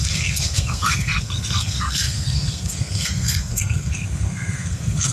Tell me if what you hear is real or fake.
fake